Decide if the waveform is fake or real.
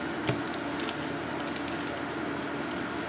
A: real